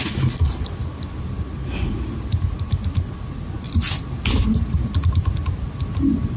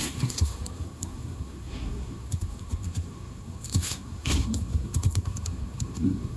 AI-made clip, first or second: second